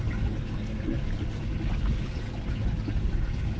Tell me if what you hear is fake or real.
real